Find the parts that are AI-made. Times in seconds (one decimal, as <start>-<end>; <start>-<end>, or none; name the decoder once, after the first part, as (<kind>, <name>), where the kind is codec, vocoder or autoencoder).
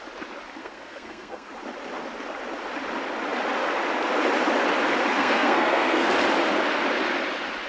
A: 0.6-1.5 (codec, SNAC); 5.1-6.1